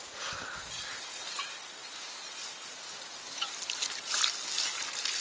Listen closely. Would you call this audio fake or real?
real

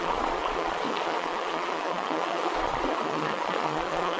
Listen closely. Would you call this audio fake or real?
fake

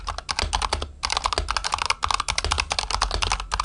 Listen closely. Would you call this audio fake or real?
real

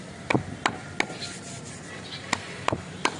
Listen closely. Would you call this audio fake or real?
real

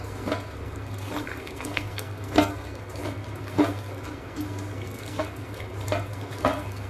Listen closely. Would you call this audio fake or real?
fake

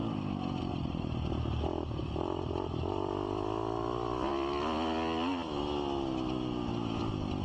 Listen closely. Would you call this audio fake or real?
real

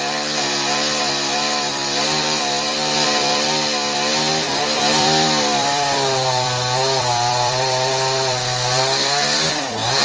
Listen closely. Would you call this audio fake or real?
fake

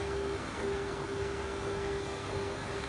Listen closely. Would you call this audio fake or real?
fake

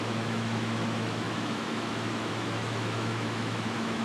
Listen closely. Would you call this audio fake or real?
fake